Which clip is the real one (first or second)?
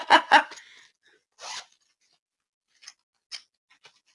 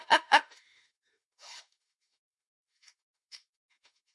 first